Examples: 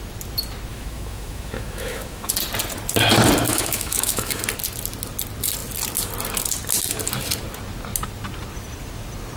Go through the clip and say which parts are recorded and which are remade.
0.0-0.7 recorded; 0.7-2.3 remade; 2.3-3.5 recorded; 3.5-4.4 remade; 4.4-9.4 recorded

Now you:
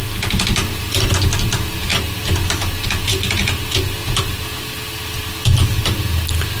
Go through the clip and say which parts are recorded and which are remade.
0.0-6.6 recorded